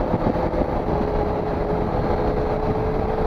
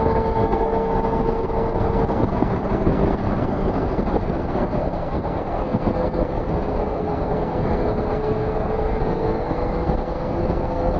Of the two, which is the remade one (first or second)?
second